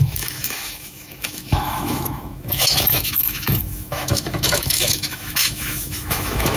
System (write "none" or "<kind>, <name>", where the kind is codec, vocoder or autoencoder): autoencoder, DAC-VAE